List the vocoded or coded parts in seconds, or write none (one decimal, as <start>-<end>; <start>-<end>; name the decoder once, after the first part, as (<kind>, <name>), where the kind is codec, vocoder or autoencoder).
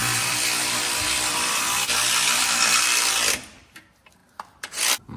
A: 0.0-3.1 (vocoder, BigVGAN v2)